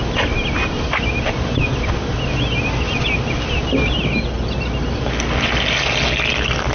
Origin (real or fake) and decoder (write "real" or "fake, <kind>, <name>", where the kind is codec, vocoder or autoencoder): real